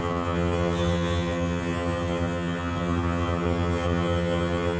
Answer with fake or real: fake